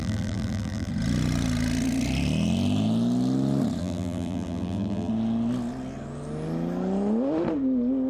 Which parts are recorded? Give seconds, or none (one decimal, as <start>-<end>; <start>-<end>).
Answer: 0.9-3.8; 5.1-8.1